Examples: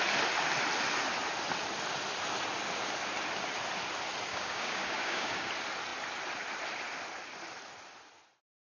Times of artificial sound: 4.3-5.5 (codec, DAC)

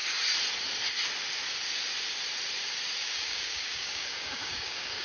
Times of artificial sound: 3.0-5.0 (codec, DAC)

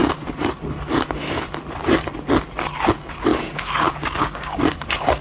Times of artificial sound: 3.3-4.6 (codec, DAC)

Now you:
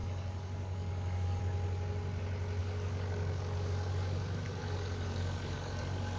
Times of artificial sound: 0.0-1.4 (codec, DAC); 2.6-6.2

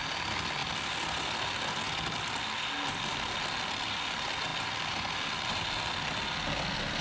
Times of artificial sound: none

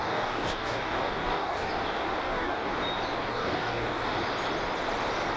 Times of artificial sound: 0.0-1.7 (codec, DAC); 2.2-2.7; 3.3-4.0